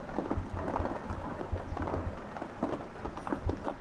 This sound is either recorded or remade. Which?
recorded